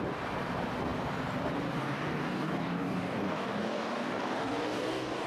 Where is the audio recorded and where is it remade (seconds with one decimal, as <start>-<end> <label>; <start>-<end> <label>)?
0.0-1.8 recorded; 1.8-5.3 remade